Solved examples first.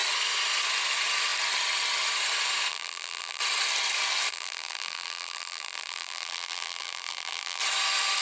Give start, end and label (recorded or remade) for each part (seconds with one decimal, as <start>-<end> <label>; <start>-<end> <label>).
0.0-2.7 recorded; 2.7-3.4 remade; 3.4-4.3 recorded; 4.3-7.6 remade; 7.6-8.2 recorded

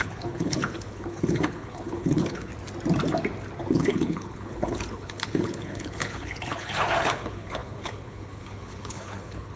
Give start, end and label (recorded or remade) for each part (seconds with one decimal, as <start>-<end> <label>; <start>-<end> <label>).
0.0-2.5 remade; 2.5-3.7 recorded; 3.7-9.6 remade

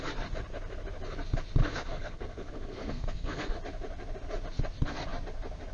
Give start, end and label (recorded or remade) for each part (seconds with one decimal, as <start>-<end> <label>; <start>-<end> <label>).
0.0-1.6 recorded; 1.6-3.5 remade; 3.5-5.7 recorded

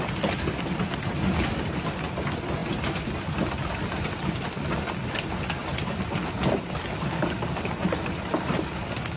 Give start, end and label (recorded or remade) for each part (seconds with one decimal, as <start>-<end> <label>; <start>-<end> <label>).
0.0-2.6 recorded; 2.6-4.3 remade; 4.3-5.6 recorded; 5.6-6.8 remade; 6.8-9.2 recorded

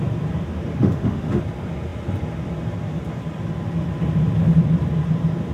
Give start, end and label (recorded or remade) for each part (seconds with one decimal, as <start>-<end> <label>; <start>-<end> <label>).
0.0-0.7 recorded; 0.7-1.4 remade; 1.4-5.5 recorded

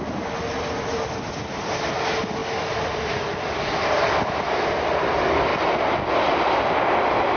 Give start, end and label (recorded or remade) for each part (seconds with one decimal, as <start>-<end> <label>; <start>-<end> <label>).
0.0-7.4 recorded

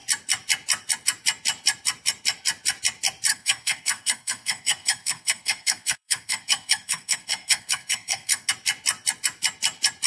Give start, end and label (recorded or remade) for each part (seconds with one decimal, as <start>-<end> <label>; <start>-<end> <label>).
0.0-3.3 recorded; 3.3-8.5 remade; 8.5-10.1 recorded

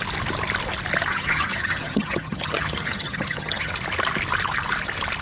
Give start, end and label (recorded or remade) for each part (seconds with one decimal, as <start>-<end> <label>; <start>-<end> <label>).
0.0-1.1 recorded; 1.1-3.7 remade; 3.7-5.2 recorded